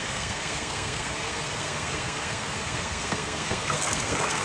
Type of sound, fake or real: fake